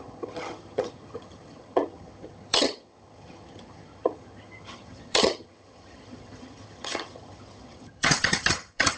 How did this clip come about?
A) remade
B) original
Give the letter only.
A